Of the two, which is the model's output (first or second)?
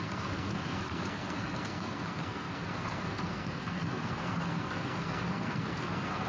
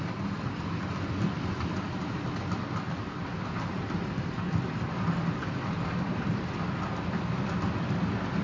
first